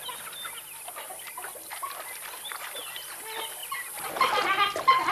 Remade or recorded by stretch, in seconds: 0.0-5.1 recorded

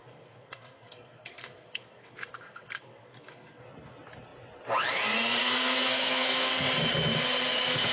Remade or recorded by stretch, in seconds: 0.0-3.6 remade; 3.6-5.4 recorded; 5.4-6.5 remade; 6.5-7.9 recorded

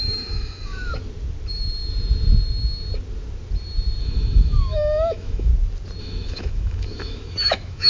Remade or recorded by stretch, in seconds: 0.0-0.9 remade; 0.9-4.0 recorded; 4.0-5.5 remade; 5.5-6.0 recorded; 6.0-7.9 remade

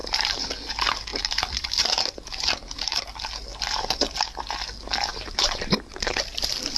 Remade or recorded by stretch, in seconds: 0.0-0.5 remade; 0.5-1.1 recorded; 1.1-3.0 remade; 3.0-3.5 recorded; 3.5-4.2 remade; 4.2-5.1 recorded; 5.1-6.2 remade; 6.2-6.8 recorded

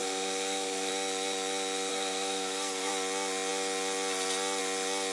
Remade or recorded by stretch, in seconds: 0.0-0.9 remade; 0.9-1.9 recorded; 1.9-2.9 remade; 2.9-5.1 recorded

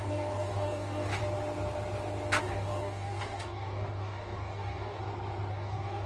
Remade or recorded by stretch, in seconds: 0.0-1.2 remade; 1.2-2.4 recorded; 2.4-5.0 remade; 5.0-5.5 recorded; 5.5-6.1 remade

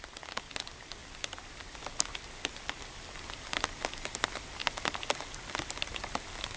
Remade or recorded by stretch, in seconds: 0.0-6.6 recorded